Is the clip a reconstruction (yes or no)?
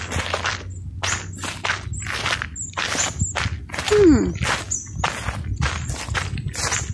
no